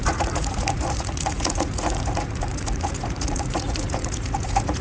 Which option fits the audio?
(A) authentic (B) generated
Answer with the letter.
B